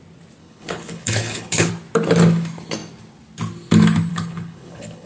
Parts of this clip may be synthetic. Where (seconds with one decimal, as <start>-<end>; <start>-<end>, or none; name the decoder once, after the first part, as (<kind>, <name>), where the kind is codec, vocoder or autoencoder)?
0.4-1.7 (codec, HILCodec); 4.1-5.1